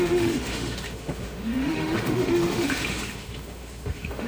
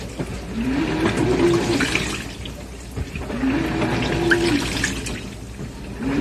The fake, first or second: first